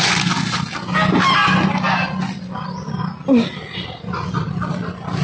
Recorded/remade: recorded